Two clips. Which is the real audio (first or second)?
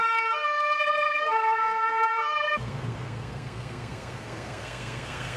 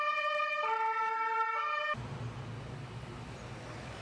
second